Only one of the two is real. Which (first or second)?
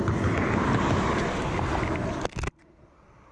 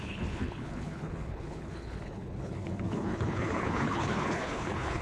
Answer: first